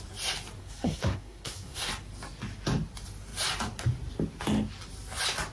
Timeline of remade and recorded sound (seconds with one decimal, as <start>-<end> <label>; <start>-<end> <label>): 0.0-0.6 recorded; 0.6-1.9 remade; 1.9-5.5 recorded